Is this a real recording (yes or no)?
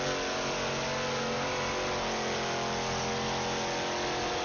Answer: yes